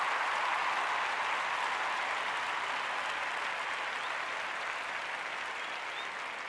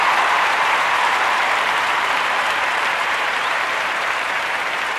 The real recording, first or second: first